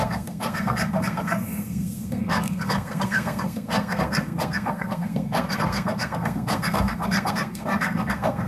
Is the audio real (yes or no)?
no